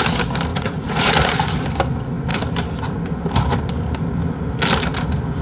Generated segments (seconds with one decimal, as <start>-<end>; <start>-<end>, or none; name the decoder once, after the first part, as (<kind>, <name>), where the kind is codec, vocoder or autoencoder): 0.5-1.1 (vocoder, Vocos)